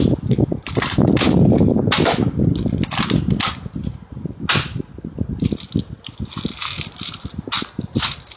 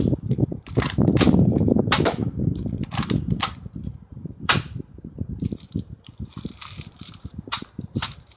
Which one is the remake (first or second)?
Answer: second